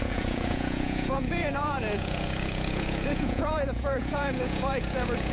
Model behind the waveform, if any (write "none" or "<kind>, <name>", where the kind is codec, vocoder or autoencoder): vocoder, Vocos